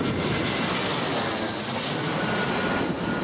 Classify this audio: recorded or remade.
recorded